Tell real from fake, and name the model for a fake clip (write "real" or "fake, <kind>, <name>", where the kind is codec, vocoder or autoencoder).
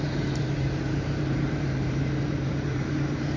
fake, vocoder, BigVGAN v2